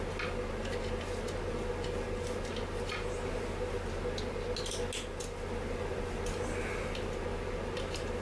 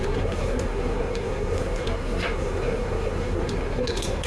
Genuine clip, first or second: first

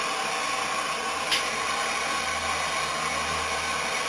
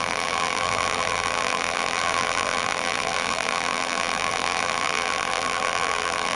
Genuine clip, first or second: first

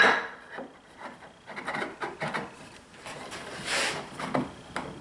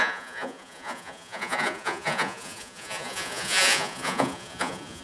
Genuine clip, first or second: first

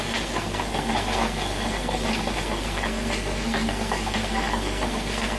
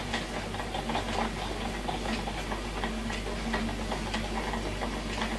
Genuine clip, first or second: second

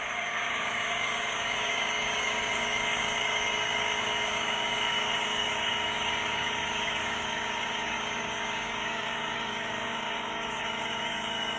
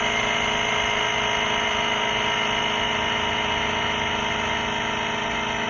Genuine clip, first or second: second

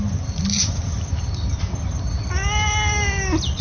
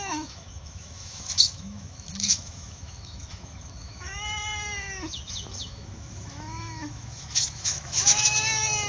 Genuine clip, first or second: first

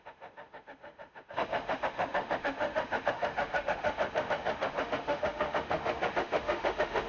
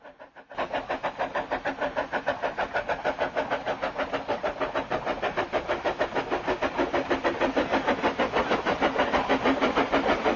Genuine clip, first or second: second